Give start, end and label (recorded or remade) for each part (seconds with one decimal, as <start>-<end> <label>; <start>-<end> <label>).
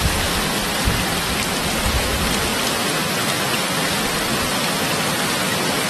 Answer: 0.0-5.9 recorded